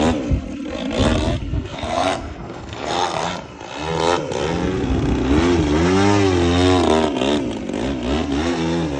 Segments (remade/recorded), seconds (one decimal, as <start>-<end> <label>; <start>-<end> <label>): 0.0-1.4 recorded; 1.4-3.3 remade; 3.3-9.0 recorded